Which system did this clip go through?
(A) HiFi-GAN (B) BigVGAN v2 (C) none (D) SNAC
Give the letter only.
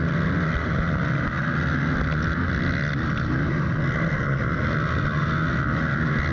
C